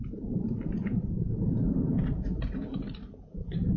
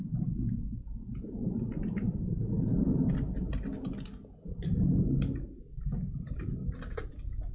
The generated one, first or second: first